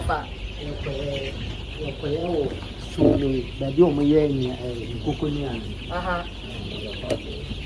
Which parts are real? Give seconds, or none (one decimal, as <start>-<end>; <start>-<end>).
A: 0.0-7.7